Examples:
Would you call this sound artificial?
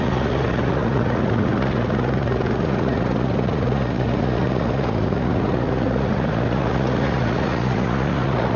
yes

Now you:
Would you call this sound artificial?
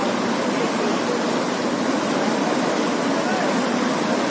no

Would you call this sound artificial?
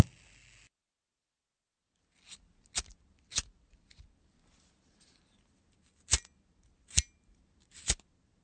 no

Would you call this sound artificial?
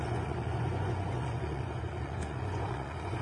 yes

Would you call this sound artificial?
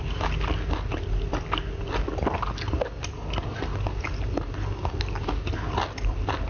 no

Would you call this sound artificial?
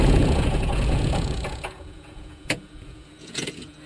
yes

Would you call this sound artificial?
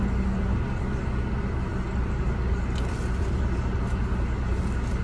no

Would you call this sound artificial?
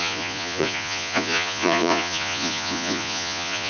yes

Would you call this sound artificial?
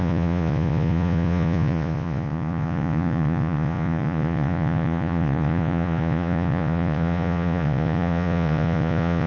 yes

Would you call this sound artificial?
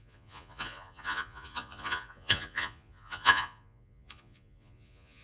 yes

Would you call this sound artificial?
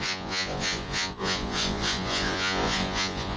yes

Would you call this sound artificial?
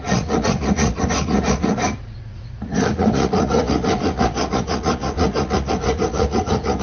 yes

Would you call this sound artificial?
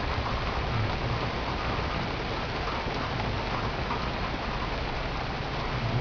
no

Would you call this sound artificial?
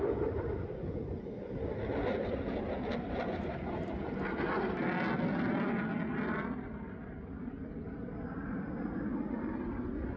no